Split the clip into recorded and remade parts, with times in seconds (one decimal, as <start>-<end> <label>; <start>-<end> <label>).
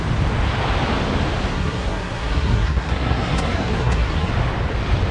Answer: 0.0-1.5 recorded; 1.5-4.3 remade; 4.3-5.1 recorded